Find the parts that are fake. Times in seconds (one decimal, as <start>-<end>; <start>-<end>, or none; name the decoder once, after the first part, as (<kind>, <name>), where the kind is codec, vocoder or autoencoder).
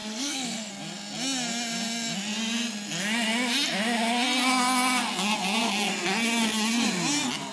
0.0-0.7 (codec, SNAC)